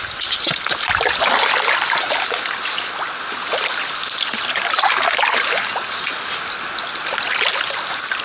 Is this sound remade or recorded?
recorded